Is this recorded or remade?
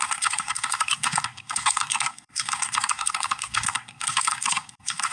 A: remade